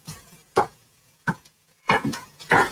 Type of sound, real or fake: fake